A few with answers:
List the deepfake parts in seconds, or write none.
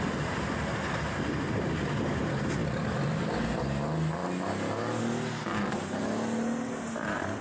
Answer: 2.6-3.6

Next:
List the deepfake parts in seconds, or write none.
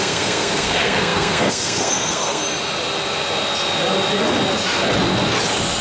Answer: 0.0-2.4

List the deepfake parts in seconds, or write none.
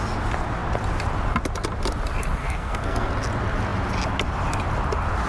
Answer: 2.4-3.1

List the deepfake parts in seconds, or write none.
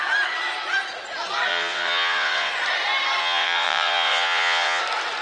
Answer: 1.5-2.5; 3.2-4.8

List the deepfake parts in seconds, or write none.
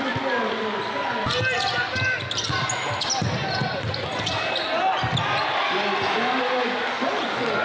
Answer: none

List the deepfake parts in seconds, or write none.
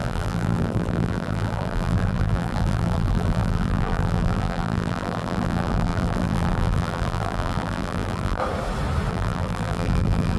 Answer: 0.0-8.4; 9.1-10.4